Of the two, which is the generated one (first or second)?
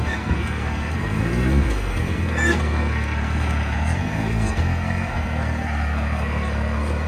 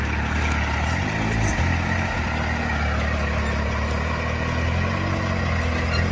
first